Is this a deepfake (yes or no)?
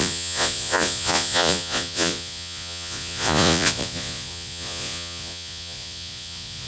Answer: yes